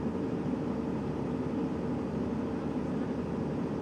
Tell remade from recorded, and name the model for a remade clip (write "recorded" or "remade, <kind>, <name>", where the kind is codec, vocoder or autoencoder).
remade, vocoder, BigVGAN v2